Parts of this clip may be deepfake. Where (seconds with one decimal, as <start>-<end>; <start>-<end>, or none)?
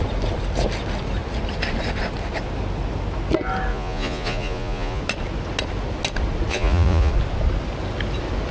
3.7-5.0; 6.5-7.1